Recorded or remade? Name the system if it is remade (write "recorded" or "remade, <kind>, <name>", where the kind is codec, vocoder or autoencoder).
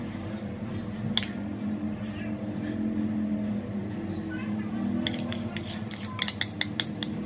recorded